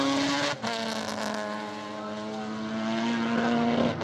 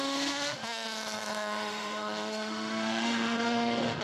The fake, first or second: second